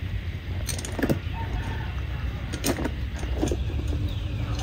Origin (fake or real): real